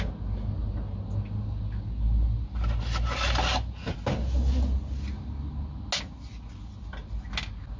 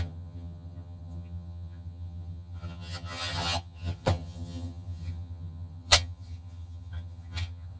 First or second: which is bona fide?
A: first